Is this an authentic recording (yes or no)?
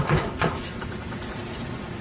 no